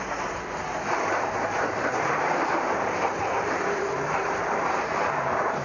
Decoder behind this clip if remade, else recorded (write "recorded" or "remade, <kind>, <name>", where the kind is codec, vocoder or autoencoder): remade, vocoder, BigVGAN v2